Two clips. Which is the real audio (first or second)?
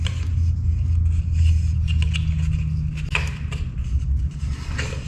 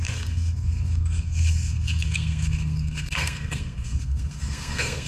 first